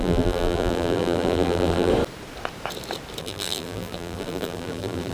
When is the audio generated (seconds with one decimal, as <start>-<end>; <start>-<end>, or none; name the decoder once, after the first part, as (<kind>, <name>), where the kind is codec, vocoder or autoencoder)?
0.0-1.9 (vocoder, BigVGAN v2); 3.2-5.1